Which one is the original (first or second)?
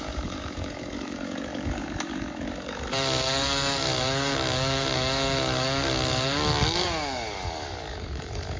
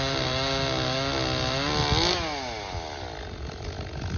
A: second